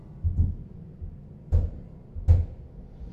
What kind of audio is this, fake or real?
real